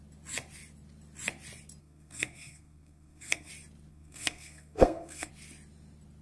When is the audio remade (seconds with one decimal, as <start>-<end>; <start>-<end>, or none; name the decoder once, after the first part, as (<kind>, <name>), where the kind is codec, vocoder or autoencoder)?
1.8-3.5 (codec, SNAC); 3.9-5.3